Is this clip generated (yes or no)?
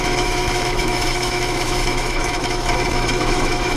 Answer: yes